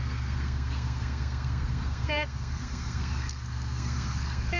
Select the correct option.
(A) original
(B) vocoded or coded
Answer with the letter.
B